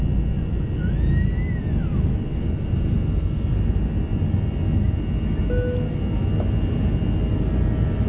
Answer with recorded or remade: recorded